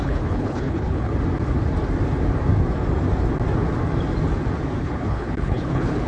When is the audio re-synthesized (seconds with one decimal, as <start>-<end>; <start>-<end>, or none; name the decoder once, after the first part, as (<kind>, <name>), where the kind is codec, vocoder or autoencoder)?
0.0-1.1 (codec, HILCodec); 4.8-6.1

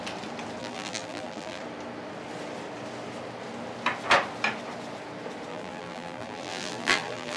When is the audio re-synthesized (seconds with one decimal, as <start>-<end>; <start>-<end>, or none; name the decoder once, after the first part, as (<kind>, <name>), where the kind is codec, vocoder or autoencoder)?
0.6-1.6 (vocoder, BigVGAN v2); 5.5-7.4

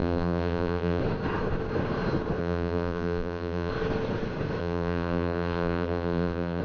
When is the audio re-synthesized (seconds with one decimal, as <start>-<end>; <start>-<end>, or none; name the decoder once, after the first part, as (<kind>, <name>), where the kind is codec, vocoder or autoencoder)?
0.0-1.0 (vocoder, BigVGAN v2); 2.4-3.7; 4.6-6.6

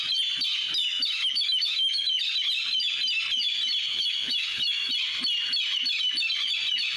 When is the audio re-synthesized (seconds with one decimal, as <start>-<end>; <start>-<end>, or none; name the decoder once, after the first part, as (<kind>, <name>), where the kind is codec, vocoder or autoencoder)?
0.8-2.2 (autoencoder, DAC-VAE); 3.9-4.9

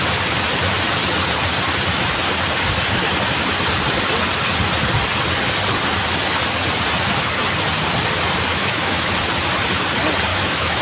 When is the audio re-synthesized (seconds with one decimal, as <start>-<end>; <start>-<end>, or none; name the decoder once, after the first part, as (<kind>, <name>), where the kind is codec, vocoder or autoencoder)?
8.5-9.1 (autoencoder, DAC-VAE); 10.3-10.8

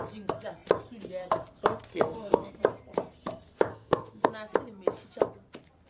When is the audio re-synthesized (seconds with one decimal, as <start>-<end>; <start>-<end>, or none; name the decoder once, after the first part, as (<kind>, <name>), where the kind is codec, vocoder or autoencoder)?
1.9-2.5 (codec, SNAC); 3.7-4.3

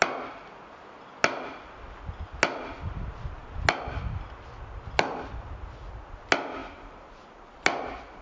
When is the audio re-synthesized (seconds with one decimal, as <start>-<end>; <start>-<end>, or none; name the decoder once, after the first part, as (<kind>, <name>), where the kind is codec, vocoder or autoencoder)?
none

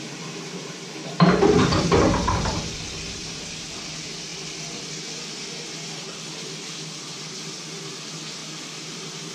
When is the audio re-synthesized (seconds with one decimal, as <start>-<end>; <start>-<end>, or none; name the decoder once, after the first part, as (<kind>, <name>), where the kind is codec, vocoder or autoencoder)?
none